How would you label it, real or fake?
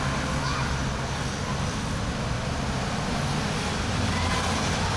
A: real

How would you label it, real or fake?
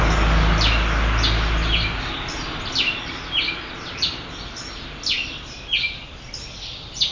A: real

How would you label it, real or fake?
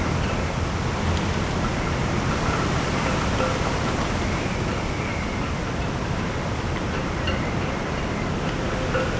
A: real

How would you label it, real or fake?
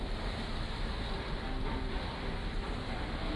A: real